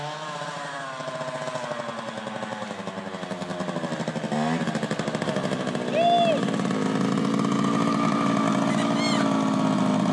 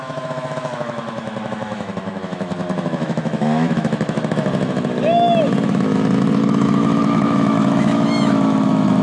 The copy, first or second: second